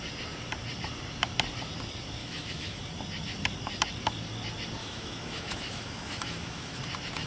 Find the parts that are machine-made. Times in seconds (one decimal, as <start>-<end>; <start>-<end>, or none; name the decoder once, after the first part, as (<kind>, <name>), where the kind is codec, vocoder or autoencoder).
2.2-2.8 (autoencoder, DAC-VAE); 4.8-6.8